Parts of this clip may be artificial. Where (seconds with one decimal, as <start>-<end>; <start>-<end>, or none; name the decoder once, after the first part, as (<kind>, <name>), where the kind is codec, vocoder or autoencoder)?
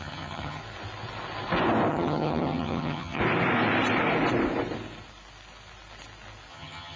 0.0-0.6 (vocoder, HiFi-GAN); 1.9-3.2; 6.5-7.0